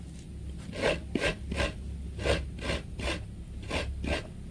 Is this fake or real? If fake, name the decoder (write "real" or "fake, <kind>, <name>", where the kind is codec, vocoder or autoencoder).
real